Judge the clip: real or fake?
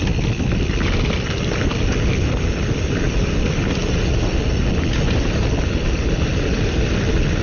real